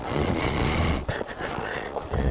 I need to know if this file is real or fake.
fake